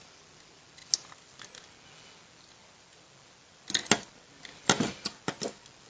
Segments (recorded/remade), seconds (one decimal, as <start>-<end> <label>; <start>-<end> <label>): 0.0-5.9 recorded